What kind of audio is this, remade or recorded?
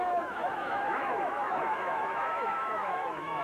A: remade